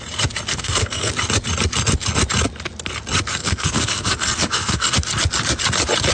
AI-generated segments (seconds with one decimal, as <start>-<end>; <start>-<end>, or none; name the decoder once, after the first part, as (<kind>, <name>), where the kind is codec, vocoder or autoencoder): 0.5-1.1 (codec, SNAC); 3.4-4.9